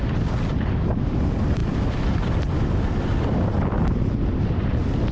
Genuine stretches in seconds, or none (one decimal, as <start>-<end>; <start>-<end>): 0.0-5.1